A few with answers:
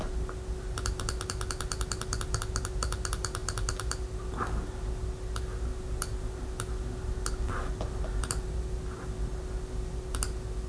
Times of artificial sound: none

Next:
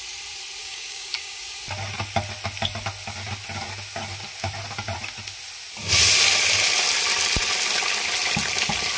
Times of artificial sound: 0.6-1.4

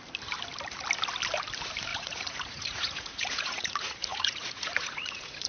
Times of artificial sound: 1.9-5.5

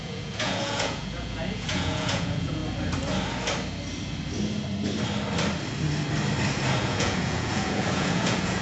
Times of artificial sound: 0.0-2.6; 6.8-8.6

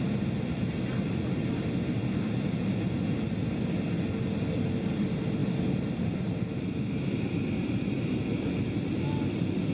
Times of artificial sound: none

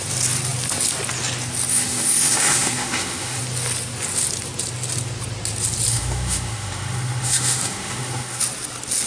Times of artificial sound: 1.7-3.4; 5.9-8.4